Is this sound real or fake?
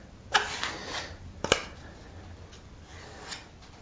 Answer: real